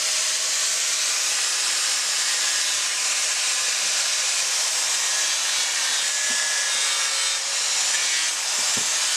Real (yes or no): yes